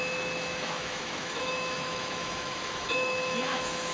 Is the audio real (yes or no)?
no